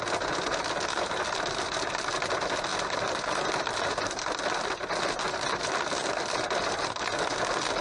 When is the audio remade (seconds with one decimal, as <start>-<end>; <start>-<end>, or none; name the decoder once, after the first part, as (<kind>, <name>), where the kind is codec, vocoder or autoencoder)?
none